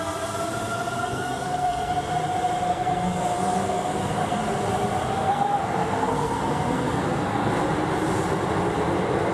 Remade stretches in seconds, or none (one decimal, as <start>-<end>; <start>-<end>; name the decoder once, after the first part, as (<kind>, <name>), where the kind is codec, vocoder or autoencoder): 1.0-1.9 (codec, SNAC); 2.7-4.4; 5.2-7.5